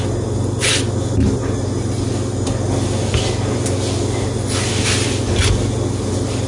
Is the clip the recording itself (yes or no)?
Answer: yes